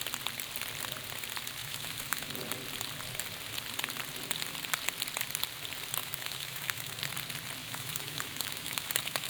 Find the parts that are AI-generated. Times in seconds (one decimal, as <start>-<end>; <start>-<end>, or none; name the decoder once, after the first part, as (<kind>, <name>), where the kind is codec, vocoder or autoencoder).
1.6-2.3 (autoencoder, DAC-VAE); 6.0-7.0; 7.6-9.3